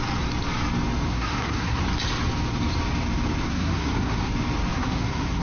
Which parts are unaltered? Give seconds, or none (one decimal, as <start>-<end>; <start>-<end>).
0.0-1.1; 1.8-3.4; 4.3-4.7